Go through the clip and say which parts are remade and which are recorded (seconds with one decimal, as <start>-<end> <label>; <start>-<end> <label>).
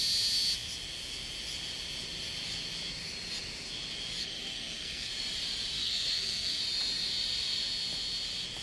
0.0-4.2 recorded; 4.2-5.1 remade; 5.1-5.8 recorded; 5.8-6.6 remade; 6.6-8.6 recorded